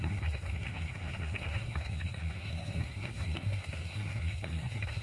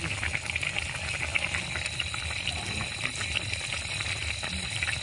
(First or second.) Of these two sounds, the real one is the second